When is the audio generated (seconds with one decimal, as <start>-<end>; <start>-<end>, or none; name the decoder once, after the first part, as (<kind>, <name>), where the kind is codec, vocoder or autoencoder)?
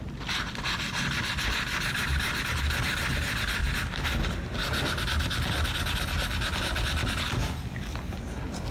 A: none